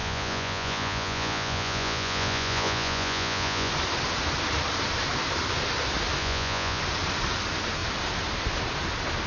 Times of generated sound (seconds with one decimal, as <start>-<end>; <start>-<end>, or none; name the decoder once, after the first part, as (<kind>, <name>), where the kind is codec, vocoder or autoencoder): 0.0-3.7 (vocoder, Vocos); 6.2-6.8